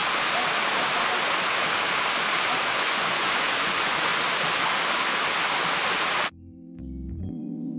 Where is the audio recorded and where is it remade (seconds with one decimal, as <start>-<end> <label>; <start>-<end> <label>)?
0.0-2.8 recorded; 2.8-4.1 remade; 4.1-7.2 recorded; 7.2-7.8 remade